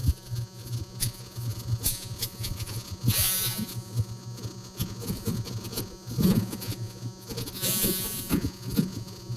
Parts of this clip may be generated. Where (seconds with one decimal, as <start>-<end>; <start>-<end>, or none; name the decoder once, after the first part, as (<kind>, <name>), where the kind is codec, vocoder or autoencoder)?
0.0-9.4 (vocoder, Vocos)